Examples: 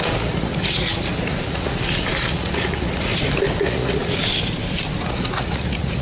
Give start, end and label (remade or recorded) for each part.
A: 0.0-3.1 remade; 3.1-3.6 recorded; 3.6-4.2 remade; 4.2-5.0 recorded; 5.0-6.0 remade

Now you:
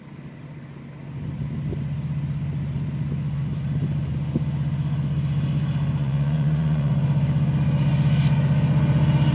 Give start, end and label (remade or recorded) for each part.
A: 0.0-6.0 recorded; 6.0-6.9 remade; 6.9-9.3 recorded